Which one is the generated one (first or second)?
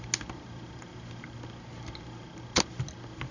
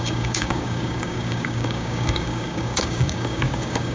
second